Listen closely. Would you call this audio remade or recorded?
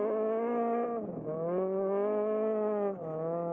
remade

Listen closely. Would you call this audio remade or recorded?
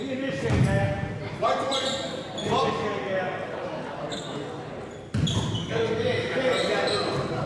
recorded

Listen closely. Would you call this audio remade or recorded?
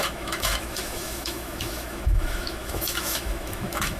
remade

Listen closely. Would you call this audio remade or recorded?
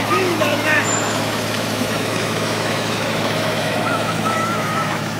remade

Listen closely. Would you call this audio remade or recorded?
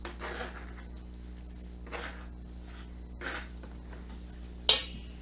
recorded